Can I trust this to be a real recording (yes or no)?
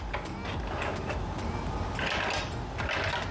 yes